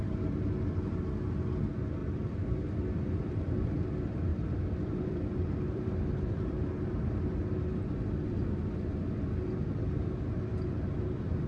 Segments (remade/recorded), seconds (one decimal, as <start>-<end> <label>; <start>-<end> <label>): 0.0-2.0 recorded; 2.0-3.8 remade; 3.8-4.3 recorded; 4.3-7.7 remade; 7.7-11.5 recorded